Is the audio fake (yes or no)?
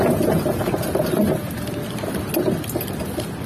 no